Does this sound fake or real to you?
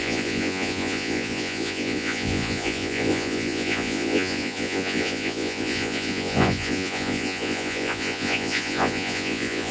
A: fake